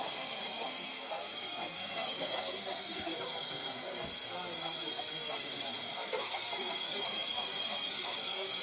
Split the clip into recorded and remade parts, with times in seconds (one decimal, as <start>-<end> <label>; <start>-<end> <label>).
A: 0.0-8.6 remade